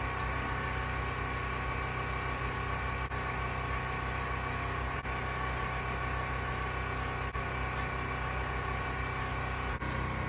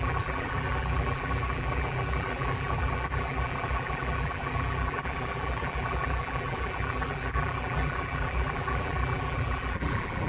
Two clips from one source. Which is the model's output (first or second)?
second